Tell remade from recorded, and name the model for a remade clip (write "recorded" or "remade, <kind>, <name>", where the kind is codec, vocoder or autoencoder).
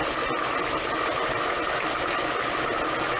recorded